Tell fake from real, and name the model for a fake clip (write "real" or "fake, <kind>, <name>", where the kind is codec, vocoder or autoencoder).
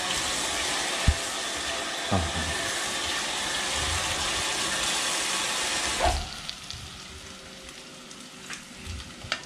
real